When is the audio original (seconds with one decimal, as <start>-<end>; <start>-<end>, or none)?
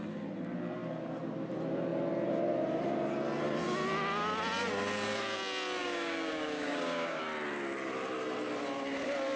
0.0-5.8; 7.2-9.4